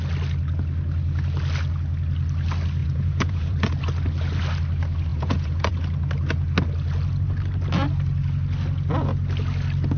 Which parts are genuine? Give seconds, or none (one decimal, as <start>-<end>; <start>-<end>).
0.0-2.8; 3.8-5.1; 5.7-10.0